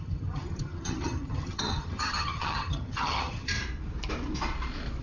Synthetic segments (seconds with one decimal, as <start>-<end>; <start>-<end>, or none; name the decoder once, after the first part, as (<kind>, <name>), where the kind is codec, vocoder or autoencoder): 0.0-3.6 (vocoder, HiFi-GAN)